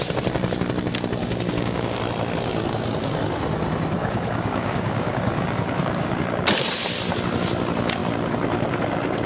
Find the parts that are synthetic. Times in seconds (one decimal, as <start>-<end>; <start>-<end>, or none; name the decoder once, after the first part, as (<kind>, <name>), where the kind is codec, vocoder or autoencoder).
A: 1.2-2.0 (codec, DAC); 4.0-6.1